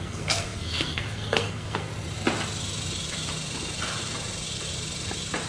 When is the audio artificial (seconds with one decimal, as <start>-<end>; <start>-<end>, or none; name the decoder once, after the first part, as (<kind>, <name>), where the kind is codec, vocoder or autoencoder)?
0.0-1.9 (codec, SNAC)